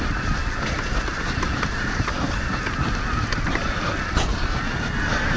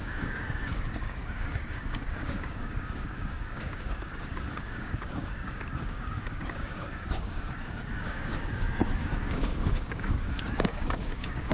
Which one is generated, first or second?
second